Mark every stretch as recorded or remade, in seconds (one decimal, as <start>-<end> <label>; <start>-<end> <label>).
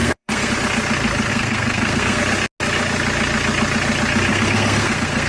0.0-0.5 remade; 0.5-1.3 recorded; 1.3-2.2 remade; 2.2-4.3 recorded; 4.3-5.3 remade